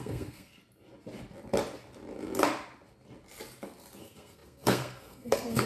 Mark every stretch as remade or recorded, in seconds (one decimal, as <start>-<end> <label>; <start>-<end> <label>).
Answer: 0.0-0.6 remade; 0.6-4.0 recorded; 4.0-5.7 remade